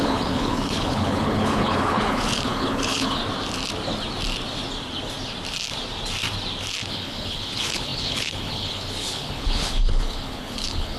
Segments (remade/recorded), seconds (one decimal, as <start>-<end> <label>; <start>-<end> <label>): 0.0-3.2 remade; 3.2-6.9 recorded; 6.9-11.0 remade